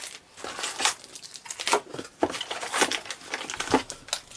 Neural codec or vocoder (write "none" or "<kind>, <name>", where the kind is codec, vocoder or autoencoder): none